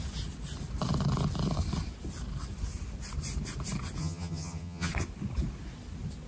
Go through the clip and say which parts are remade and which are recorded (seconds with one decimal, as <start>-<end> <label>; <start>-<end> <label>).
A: 0.0-4.0 recorded; 4.0-4.9 remade; 4.9-6.3 recorded